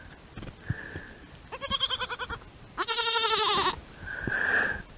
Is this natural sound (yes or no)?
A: yes